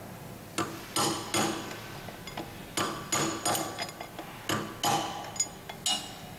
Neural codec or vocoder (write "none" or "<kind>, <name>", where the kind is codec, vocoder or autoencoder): none